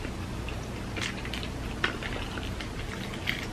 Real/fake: real